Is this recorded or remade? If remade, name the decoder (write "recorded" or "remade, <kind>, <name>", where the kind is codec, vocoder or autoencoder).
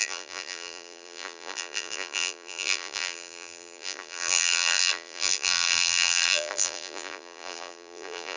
remade, vocoder, BigVGAN v2